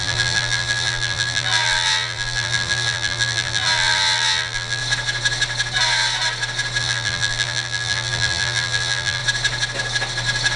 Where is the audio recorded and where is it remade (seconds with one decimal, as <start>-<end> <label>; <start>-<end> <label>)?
0.0-4.8 remade; 4.8-6.8 recorded; 6.8-9.2 remade; 9.2-10.6 recorded